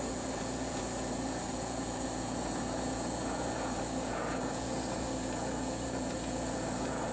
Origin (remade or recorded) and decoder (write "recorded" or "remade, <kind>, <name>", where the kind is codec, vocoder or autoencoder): remade, vocoder, Vocos